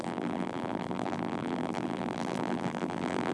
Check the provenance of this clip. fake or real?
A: fake